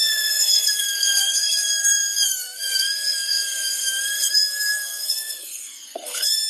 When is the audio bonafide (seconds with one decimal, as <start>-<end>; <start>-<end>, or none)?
none